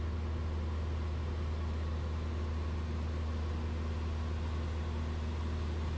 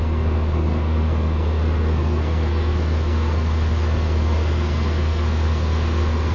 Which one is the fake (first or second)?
second